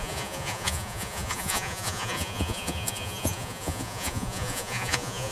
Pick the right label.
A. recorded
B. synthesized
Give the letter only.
B